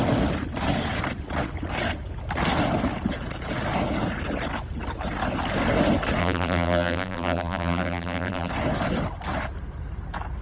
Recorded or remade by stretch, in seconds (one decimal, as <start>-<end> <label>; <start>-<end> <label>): 0.0-6.2 recorded; 6.2-8.5 remade; 8.5-10.4 recorded